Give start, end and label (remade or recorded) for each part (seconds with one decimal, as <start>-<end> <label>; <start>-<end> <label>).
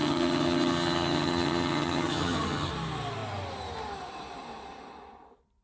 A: 0.0-2.7 remade; 2.7-5.6 recorded